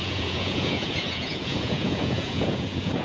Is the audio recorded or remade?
remade